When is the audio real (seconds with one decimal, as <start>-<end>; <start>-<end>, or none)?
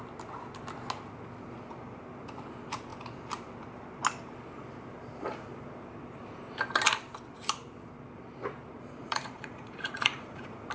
0.0-9.0